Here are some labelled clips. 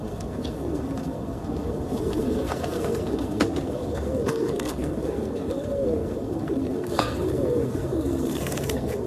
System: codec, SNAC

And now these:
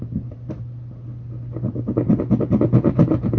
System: none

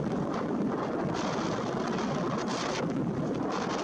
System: none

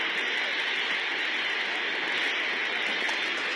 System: none